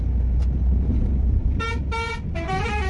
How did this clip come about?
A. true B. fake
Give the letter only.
A